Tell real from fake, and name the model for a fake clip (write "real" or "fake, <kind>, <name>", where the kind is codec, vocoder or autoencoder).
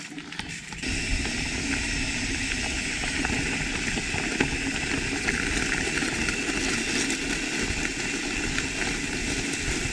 real